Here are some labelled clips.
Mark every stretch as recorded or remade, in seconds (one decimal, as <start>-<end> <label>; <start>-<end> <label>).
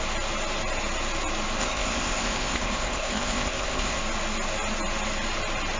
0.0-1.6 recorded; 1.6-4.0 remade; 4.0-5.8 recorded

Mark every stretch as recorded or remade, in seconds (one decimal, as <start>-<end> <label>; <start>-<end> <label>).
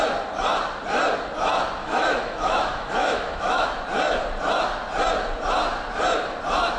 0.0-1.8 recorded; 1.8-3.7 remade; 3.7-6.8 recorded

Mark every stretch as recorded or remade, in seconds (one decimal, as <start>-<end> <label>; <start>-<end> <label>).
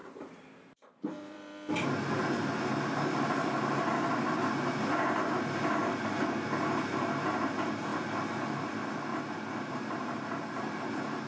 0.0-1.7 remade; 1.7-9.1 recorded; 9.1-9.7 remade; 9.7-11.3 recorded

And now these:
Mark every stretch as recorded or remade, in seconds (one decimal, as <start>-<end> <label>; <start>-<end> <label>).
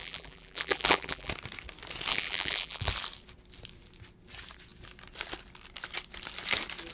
0.0-1.3 remade; 1.3-2.1 recorded; 2.1-2.9 remade; 2.9-6.9 recorded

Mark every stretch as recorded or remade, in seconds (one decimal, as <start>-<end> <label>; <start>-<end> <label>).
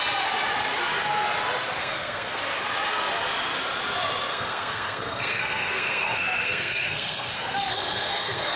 0.0-1.8 recorded; 1.8-2.4 remade; 2.4-4.3 recorded; 4.3-8.6 remade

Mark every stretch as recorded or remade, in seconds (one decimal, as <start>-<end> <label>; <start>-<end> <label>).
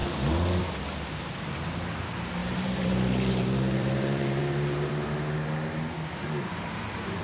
0.0-2.4 recorded; 2.4-4.9 remade; 4.9-6.5 recorded; 6.5-7.2 remade